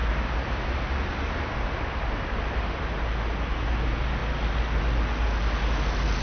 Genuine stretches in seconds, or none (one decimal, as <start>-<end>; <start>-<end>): 0.0-6.2